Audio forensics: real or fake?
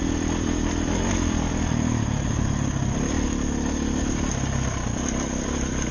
fake